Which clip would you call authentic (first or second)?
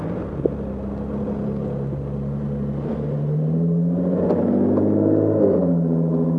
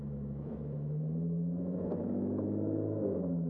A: first